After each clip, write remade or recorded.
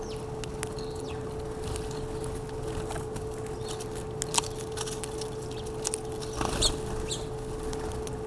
recorded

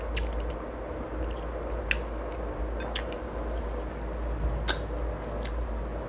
recorded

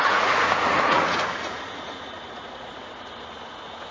remade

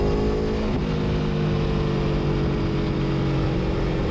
recorded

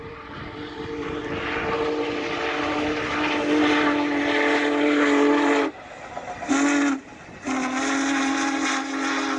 recorded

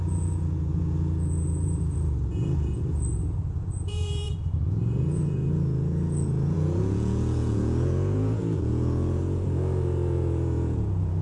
remade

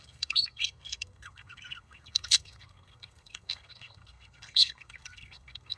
remade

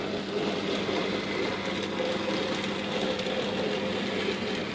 recorded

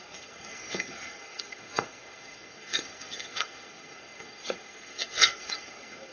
remade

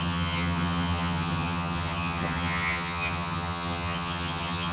remade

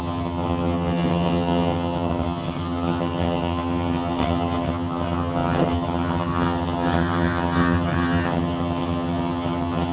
remade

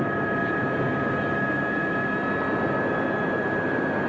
recorded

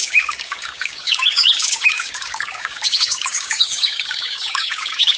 remade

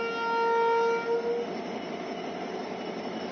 recorded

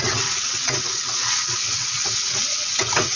remade